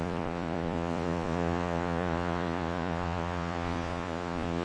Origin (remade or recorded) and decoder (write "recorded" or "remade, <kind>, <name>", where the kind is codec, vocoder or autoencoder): remade, vocoder, Vocos